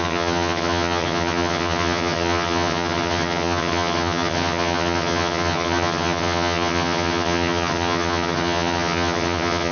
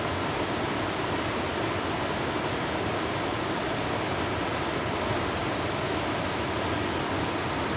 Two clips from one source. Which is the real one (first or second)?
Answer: second